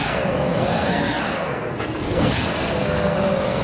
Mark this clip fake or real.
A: fake